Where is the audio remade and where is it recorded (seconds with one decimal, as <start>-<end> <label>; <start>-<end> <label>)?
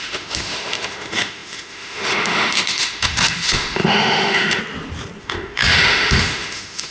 0.0-4.6 remade; 4.6-5.2 recorded; 5.2-6.9 remade